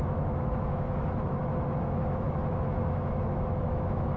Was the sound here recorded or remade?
remade